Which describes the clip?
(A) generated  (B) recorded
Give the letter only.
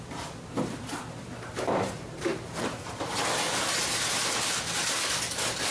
A